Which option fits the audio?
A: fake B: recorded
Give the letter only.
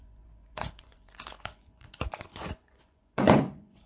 A